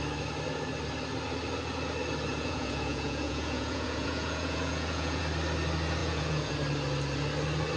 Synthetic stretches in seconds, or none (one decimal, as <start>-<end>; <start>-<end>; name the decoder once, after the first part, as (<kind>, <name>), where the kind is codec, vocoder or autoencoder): 2.3-5.2 (vocoder, Vocos); 6.0-6.5